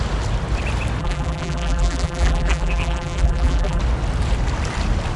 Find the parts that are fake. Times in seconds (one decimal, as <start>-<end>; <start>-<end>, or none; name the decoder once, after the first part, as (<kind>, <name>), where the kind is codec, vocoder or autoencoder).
1.0-3.8 (vocoder, BigVGAN v2)